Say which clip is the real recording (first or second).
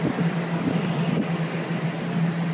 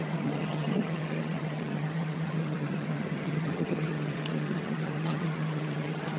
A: first